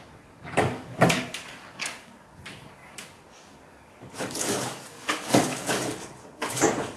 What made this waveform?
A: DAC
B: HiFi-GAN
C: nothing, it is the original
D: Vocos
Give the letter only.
A